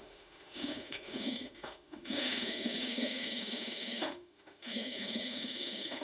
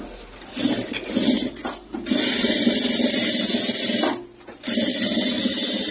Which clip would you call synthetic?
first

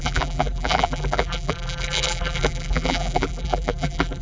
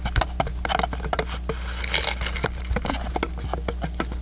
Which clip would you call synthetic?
first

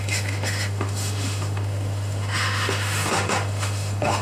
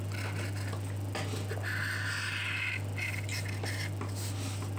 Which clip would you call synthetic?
first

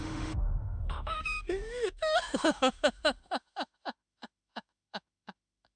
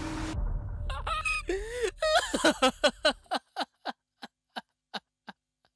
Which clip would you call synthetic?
first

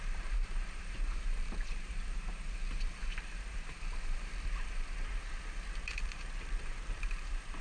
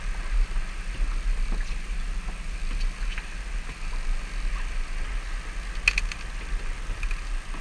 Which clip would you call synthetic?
first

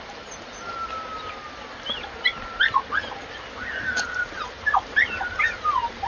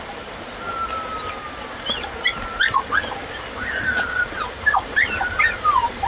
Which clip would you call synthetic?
second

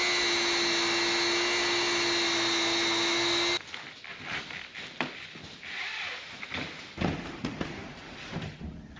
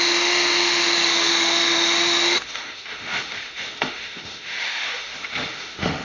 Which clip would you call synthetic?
second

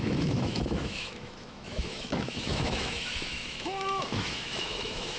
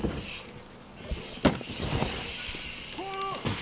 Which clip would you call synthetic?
first